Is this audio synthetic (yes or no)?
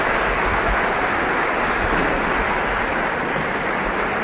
no